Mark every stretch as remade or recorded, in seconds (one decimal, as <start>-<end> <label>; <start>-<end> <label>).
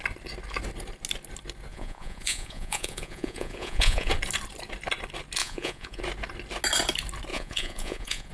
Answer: 0.0-1.7 recorded; 1.7-4.1 remade; 4.1-5.4 recorded; 5.4-6.0 remade; 6.0-7.3 recorded; 7.3-8.3 remade